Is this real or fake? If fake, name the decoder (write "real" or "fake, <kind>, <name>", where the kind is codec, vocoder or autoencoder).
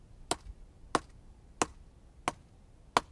real